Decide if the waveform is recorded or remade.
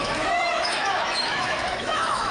remade